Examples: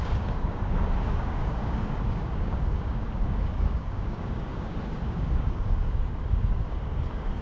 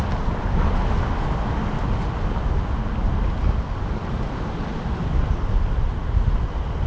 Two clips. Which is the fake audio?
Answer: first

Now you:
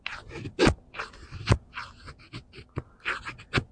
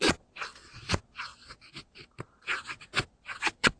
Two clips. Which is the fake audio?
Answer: second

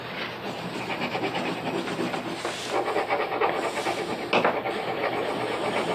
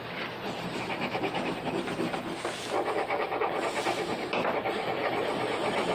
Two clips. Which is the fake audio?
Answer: second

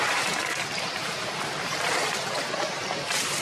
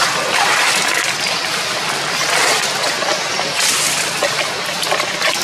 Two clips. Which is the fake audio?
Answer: first